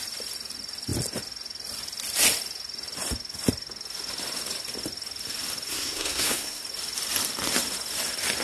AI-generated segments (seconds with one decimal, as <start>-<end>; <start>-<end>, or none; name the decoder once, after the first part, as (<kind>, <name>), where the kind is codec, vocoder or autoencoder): 5.7-6.6 (codec, SNAC)